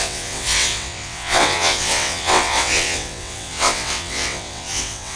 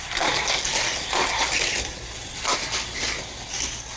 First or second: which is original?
second